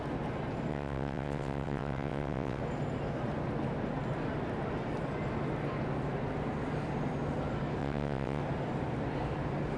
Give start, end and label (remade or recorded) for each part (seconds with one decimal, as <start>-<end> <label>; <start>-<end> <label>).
0.0-0.7 recorded; 0.7-2.6 remade; 2.6-7.8 recorded; 7.8-8.4 remade; 8.4-9.8 recorded